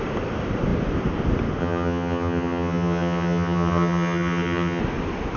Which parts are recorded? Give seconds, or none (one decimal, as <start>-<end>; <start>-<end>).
0.0-1.6; 4.8-5.4